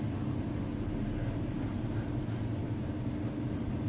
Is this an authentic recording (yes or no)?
yes